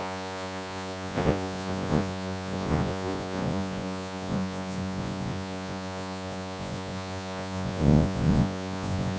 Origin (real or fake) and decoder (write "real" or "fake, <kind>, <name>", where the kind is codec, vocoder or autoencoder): fake, vocoder, Vocos